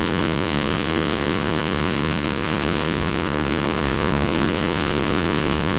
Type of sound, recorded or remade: remade